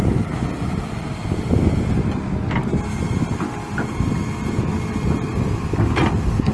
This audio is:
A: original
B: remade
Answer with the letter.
A